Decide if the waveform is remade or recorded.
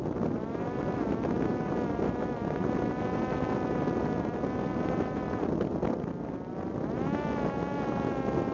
recorded